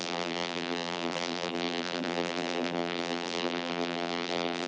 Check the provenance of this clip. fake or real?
fake